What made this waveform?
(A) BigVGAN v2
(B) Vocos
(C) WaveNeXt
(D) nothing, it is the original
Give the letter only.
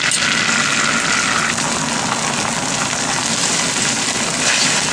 D